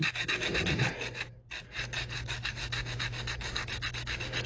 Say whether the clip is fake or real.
real